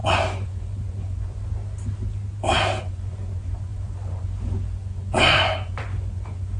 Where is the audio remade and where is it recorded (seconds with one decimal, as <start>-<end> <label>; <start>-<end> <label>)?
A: 0.0-1.4 remade; 1.4-2.8 recorded; 2.8-6.6 remade